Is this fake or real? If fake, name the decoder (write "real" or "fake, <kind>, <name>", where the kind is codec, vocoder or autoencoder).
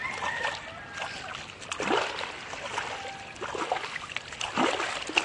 real